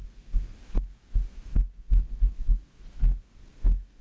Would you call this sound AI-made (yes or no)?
yes